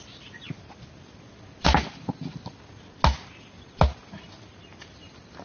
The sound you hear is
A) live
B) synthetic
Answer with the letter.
A